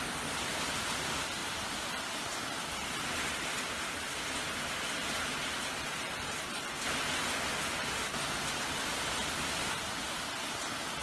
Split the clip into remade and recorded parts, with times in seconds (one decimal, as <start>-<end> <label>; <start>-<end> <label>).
0.0-11.0 recorded